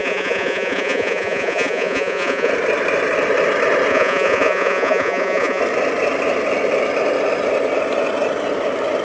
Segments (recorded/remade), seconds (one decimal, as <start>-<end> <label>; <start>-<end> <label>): 0.0-2.5 remade; 2.5-3.9 recorded; 3.9-5.6 remade; 5.6-9.0 recorded